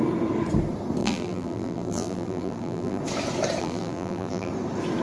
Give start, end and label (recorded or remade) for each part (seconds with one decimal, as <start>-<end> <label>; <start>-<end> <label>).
0.0-1.0 recorded; 1.0-3.0 remade; 3.0-3.6 recorded; 3.6-4.5 remade; 4.5-5.0 recorded